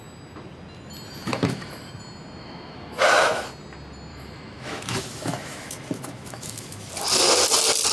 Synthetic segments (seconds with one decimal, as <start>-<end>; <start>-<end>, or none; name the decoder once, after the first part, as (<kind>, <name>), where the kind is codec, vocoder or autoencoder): 1.3-1.9 (autoencoder, DAC-VAE); 2.4-3.5; 4.1-6.9